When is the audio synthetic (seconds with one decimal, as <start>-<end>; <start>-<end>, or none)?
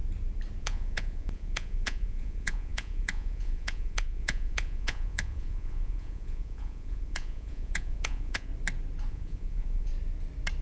0.6-8.5; 9.1-9.9